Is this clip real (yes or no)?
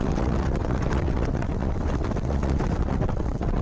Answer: no